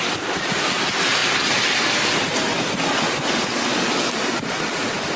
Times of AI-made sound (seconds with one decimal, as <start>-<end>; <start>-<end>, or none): none